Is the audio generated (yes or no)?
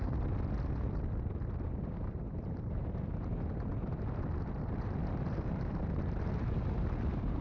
no